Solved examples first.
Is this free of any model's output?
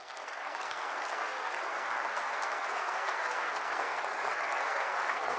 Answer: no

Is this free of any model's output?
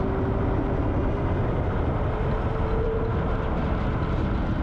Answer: yes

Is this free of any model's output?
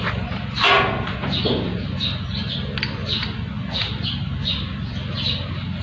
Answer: yes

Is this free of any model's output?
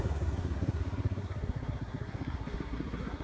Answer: no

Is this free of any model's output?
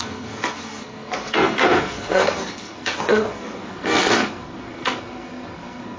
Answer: no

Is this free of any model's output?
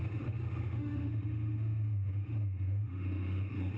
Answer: no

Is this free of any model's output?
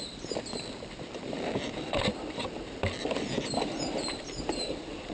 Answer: no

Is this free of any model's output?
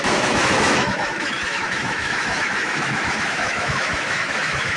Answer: no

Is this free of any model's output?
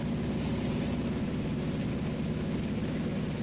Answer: yes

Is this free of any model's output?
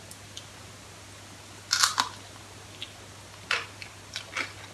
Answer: yes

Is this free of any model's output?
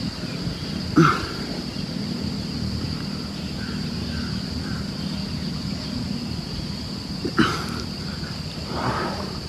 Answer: yes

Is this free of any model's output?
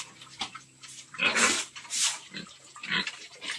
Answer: no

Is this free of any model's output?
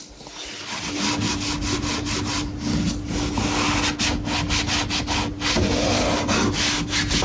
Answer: yes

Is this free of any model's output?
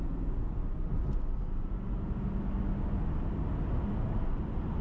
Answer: yes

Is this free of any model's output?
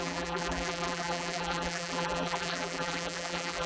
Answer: no